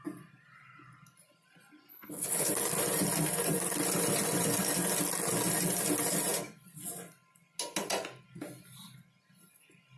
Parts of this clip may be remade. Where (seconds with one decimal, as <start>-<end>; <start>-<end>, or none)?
1.9-2.5